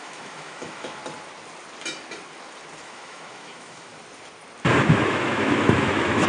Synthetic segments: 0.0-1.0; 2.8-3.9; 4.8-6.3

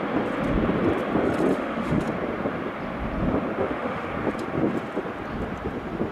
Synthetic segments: 1.5-2.0; 3.6-4.1